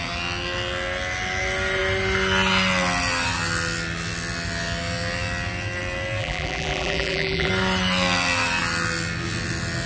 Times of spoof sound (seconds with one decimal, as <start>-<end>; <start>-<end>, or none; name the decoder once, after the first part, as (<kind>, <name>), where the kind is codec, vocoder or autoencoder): 6.2-7.5 (vocoder, BigVGAN v2)